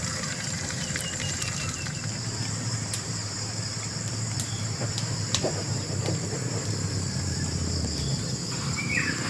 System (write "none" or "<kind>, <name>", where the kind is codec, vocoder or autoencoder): vocoder, BigVGAN v2